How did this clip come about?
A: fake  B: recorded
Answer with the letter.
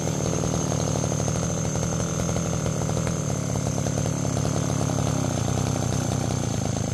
B